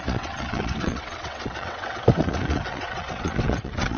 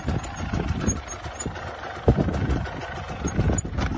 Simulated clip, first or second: first